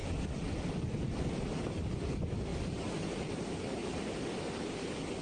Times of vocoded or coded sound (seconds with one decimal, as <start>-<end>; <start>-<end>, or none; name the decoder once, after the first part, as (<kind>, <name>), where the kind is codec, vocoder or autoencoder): 0.7-3.6 (vocoder, BigVGAN v2)